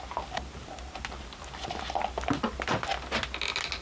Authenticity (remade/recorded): recorded